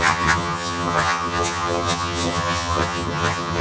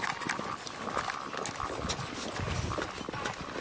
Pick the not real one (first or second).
first